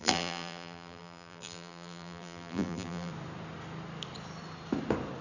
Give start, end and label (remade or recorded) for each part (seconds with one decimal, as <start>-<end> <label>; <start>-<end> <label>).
0.0-3.1 remade; 3.1-5.2 recorded